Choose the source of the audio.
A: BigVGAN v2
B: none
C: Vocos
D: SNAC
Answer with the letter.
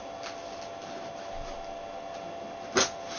B